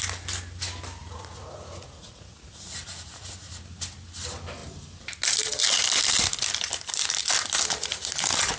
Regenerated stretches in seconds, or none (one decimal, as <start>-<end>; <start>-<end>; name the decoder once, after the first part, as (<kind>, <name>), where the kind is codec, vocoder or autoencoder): 1.0-3.5 (vocoder, Vocos)